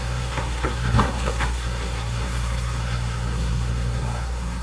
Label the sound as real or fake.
fake